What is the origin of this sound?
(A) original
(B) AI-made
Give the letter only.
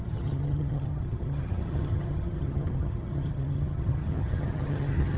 B